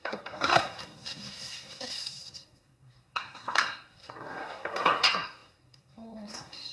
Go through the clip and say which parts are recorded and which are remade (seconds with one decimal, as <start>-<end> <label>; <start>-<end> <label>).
0.0-6.7 remade